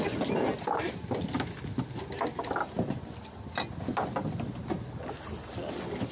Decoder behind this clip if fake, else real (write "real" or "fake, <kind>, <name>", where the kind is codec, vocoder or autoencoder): real